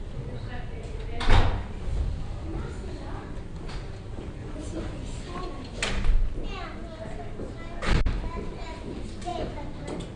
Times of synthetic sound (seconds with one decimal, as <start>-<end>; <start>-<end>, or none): 4.4-5.4